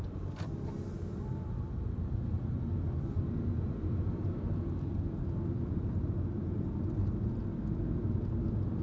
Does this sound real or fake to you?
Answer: real